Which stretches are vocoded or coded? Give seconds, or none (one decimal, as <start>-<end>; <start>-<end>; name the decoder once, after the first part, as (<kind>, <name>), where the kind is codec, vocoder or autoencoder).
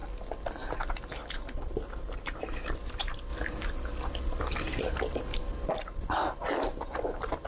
none